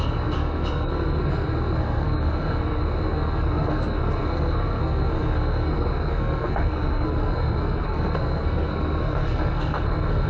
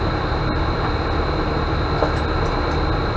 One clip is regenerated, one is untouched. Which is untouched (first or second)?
second